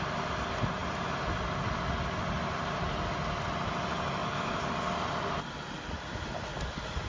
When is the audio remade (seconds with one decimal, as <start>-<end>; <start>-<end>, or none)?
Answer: 4.2-5.2